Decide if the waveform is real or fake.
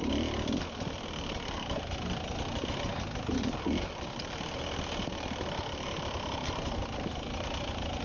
real